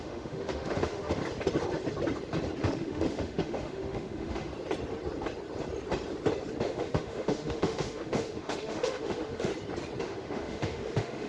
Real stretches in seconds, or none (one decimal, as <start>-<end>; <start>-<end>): 1.2-2.6; 4.5-6.6; 9.5-10.0